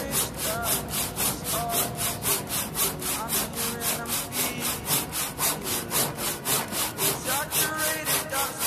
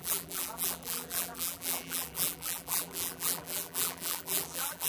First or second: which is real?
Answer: first